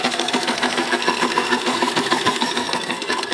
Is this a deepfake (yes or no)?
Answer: yes